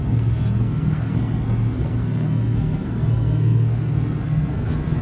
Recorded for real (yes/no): no